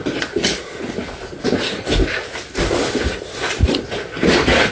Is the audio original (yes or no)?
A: yes